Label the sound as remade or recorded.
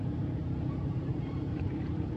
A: remade